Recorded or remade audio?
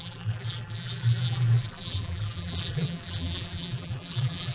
remade